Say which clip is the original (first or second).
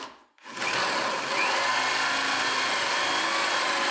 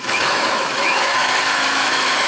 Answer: first